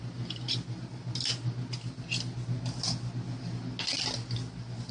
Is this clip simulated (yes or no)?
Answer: no